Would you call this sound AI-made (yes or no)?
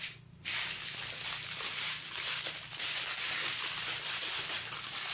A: no